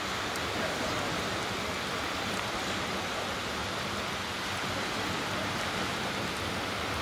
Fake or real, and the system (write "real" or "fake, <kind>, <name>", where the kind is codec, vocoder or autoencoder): real